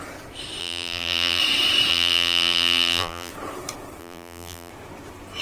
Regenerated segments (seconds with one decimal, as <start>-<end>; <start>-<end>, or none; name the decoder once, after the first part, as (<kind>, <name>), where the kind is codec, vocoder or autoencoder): 0.6-1.4 (vocoder, BigVGAN v2); 1.9-3.3; 4.0-4.7